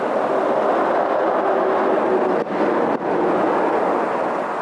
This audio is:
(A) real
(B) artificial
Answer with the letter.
A